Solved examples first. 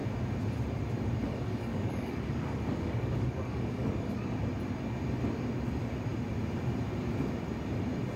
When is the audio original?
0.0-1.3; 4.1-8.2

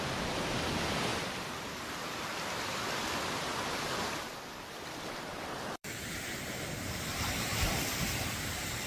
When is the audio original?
0.0-1.1; 6.1-7.5

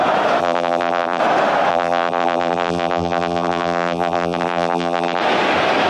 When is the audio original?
0.0-0.4; 1.2-1.7; 5.2-5.9

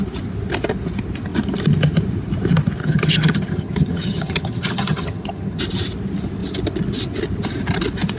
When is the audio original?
0.0-2.8; 5.6-8.2